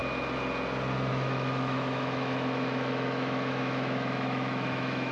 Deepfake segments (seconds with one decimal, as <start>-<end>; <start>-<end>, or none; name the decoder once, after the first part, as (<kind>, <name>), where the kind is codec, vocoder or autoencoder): 1.1-5.1 (autoencoder, DAC-VAE)